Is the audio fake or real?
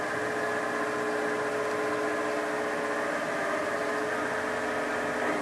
real